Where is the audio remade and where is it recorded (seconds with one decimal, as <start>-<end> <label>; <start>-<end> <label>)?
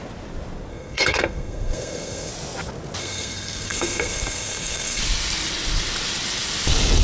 0.0-0.7 recorded; 0.7-2.3 remade; 2.3-3.0 recorded; 3.0-5.0 remade; 5.0-7.0 recorded